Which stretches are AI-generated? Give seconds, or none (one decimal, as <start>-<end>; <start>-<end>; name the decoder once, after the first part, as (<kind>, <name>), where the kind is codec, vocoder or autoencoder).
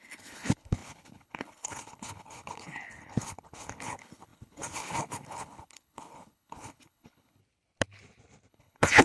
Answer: 0.0-7.4 (codec, HILCodec); 8.5-9.0